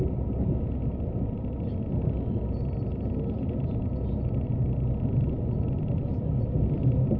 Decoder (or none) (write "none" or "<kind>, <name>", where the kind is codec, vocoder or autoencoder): none